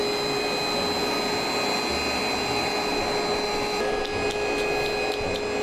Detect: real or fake real